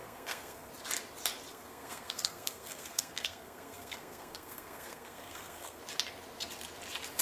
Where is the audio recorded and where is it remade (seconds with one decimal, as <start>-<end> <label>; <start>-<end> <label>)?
0.0-0.7 remade; 0.7-1.5 recorded; 1.5-5.8 remade; 5.8-7.2 recorded